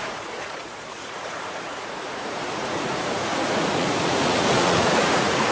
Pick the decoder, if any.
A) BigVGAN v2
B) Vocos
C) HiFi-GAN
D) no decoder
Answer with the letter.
B